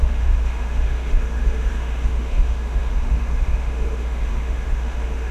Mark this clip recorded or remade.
remade